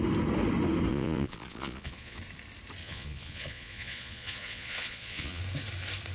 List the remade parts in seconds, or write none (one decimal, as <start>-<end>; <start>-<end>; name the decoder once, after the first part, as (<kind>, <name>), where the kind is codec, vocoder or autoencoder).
0.9-2.2 (vocoder, Vocos); 2.8-5.4